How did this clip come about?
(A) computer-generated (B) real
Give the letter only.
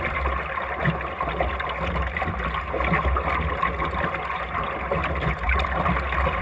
B